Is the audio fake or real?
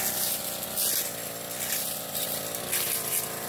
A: real